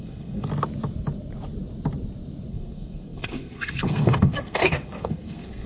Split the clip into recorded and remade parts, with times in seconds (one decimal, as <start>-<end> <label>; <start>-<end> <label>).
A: 0.0-0.5 remade; 0.5-2.5 recorded; 2.5-5.7 remade